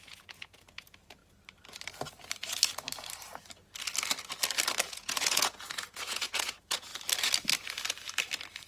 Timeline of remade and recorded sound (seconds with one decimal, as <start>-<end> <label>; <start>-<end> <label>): 0.0-1.2 remade; 1.2-4.9 recorded; 4.9-6.9 remade; 6.9-8.7 recorded

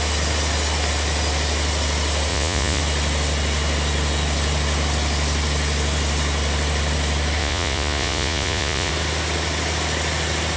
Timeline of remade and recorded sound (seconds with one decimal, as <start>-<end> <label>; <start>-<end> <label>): 0.0-2.3 recorded; 2.3-2.8 remade; 2.8-7.4 recorded; 7.4-8.9 remade; 8.9-10.6 recorded